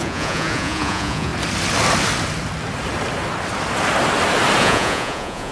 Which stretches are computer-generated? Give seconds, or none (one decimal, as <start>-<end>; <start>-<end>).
0.0-1.3; 4.6-5.5